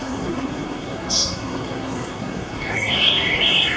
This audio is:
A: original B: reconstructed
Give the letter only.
B